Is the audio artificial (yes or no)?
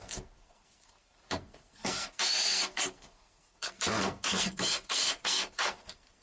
yes